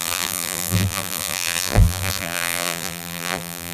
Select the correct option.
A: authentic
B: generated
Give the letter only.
B